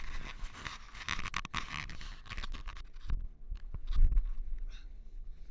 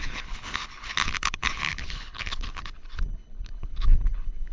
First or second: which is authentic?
first